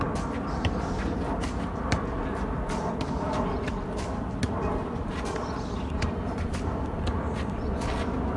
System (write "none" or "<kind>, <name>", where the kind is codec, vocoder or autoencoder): none